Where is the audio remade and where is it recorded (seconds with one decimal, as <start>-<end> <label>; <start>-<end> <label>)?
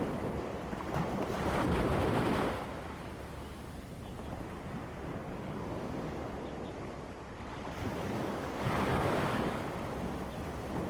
0.0-5.2 recorded; 5.2-5.9 remade; 5.9-7.8 recorded; 7.8-8.4 remade; 8.4-8.9 recorded; 8.9-9.6 remade; 9.6-10.9 recorded